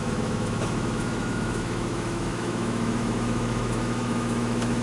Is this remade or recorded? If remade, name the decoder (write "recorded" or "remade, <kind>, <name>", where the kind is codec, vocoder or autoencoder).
remade, autoencoder, DAC-VAE